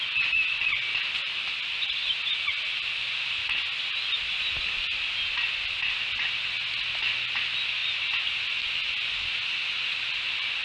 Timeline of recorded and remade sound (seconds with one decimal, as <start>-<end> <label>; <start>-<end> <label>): 0.0-10.6 recorded